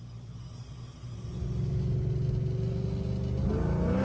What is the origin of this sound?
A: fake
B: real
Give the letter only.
B